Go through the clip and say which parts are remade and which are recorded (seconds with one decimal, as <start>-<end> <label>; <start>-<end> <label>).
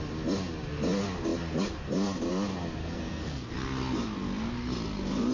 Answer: 0.0-2.8 recorded; 2.8-3.5 remade; 3.5-5.3 recorded